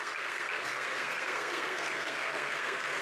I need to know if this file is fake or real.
fake